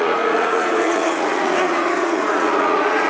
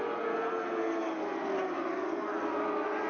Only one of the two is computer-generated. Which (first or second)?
first